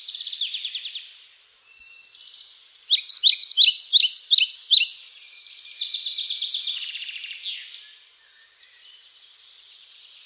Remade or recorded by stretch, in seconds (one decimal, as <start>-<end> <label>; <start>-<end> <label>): 0.0-10.3 recorded